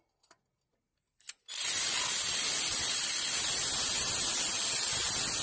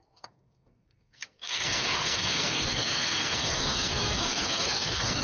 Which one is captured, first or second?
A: first